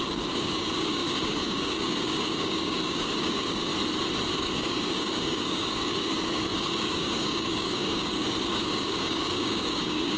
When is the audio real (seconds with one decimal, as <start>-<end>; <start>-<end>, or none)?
3.7-4.3